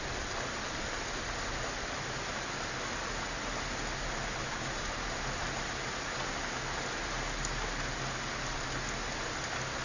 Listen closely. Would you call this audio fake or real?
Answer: real